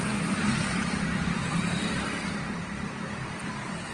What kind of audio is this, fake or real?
fake